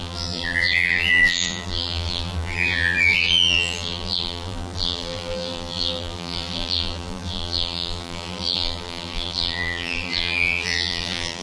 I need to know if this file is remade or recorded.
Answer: remade